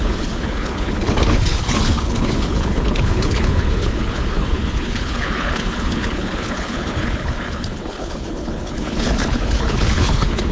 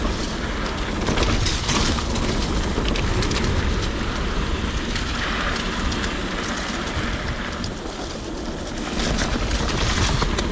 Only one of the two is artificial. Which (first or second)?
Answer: first